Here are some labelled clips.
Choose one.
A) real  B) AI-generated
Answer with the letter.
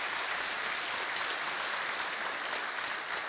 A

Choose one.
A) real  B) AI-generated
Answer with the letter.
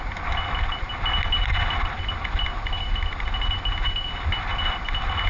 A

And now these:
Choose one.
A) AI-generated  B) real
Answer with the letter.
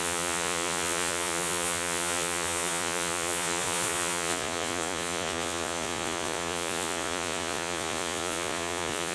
A